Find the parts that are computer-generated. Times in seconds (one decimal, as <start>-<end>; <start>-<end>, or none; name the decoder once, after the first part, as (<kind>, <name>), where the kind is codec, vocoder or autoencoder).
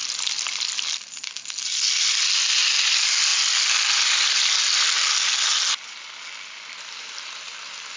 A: none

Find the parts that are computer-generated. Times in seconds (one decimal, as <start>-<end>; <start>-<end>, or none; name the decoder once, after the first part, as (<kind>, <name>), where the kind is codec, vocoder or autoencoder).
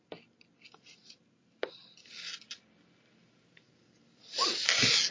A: none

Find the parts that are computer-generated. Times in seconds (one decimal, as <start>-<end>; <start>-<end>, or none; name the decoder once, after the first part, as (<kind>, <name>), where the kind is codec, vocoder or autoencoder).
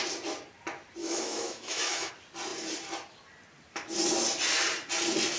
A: 1.0-2.1 (autoencoder, DAC-VAE)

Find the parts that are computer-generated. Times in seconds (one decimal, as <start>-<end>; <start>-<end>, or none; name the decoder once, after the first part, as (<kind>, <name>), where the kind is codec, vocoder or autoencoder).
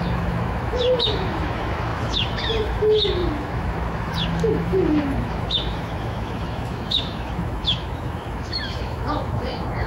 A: 0.0-9.9 (autoencoder, DAC-VAE)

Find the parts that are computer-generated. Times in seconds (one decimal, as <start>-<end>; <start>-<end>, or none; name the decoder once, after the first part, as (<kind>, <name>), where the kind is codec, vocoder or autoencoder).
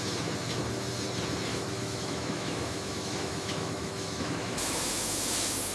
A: 1.5-4.9 (autoencoder, DAC-VAE)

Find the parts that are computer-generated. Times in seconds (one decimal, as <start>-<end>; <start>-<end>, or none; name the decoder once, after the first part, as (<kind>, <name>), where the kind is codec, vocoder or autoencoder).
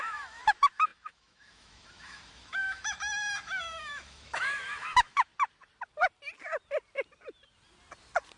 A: 0.0-5.3 (autoencoder, DAC-VAE)